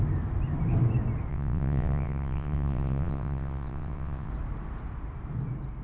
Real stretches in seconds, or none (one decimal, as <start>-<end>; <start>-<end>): 0.0-1.3; 4.3-5.8